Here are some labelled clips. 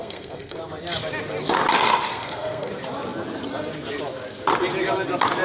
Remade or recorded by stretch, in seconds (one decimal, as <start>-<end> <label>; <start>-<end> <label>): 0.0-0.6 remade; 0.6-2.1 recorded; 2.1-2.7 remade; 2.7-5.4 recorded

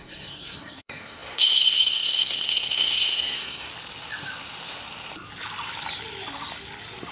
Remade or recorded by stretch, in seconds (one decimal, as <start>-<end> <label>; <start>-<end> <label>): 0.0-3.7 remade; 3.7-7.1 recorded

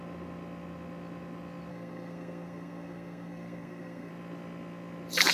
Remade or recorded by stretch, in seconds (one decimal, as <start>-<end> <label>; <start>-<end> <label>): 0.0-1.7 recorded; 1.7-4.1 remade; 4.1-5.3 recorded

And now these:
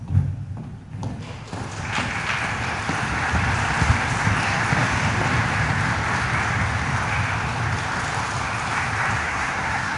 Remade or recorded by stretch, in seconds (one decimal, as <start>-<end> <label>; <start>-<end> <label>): 0.0-9.2 recorded; 9.2-10.0 remade

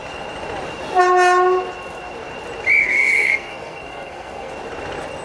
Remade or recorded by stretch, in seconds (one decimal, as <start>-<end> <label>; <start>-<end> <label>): 0.0-2.8 recorded; 2.8-4.5 remade; 4.5-5.2 recorded

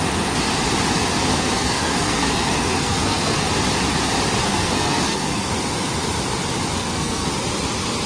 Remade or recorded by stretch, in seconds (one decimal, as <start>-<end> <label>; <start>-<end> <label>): 0.0-1.3 recorded; 1.3-3.4 remade; 3.4-4.4 recorded; 4.4-5.5 remade; 5.5-6.8 recorded; 6.8-7.3 remade; 7.3-8.1 recorded